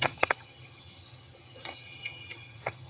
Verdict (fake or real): fake